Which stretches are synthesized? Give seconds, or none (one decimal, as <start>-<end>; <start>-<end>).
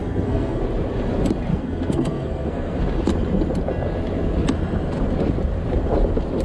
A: 0.0-0.6; 1.5-2.8